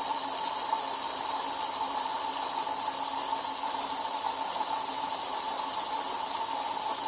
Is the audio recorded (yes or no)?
yes